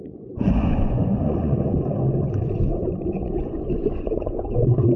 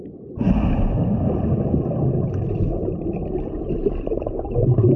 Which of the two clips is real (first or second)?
second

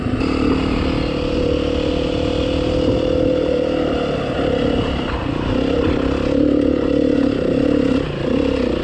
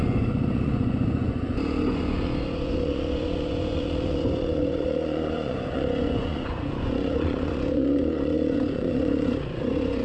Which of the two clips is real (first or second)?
first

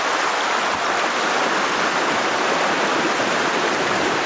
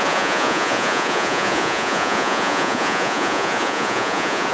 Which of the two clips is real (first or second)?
first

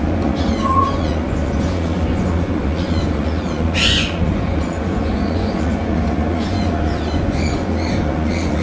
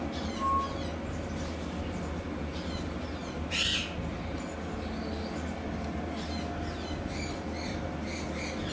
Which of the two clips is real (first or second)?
second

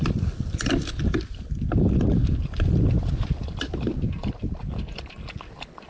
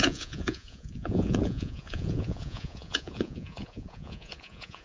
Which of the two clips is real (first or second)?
first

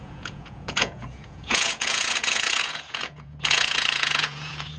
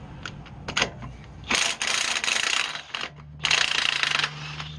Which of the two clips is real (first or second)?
second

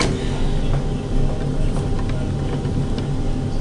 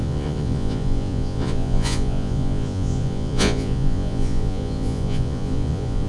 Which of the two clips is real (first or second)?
first